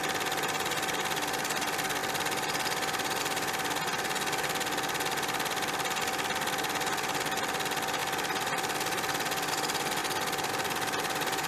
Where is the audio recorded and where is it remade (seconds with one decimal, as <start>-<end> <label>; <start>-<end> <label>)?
0.0-11.5 recorded